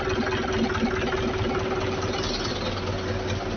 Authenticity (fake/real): real